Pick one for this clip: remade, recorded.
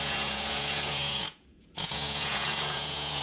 remade